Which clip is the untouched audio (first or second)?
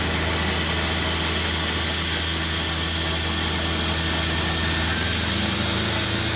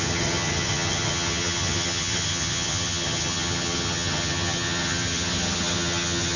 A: first